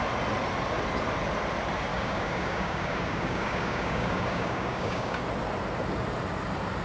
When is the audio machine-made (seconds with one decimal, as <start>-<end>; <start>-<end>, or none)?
1.9-5.2